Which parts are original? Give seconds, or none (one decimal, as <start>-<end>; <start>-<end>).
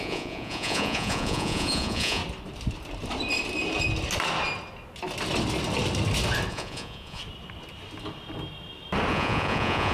2.2-6.5; 7.2-9.1